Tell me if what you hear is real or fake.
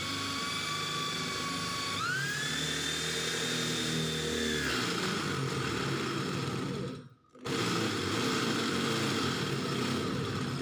real